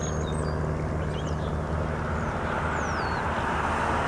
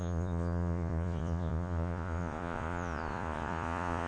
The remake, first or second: second